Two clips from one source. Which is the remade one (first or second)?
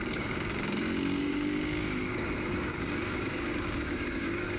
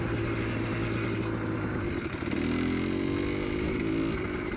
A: first